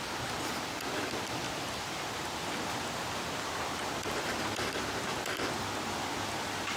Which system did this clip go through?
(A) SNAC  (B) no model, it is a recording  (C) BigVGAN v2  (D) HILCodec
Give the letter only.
B